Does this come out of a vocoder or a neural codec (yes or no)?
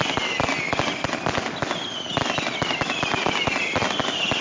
no